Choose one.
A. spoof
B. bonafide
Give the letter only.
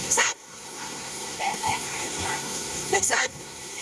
A